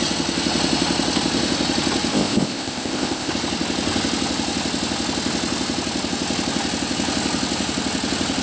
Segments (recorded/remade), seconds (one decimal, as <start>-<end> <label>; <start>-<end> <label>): 0.0-2.1 recorded; 2.1-3.3 remade; 3.3-8.4 recorded